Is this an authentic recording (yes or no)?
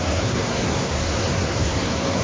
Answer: no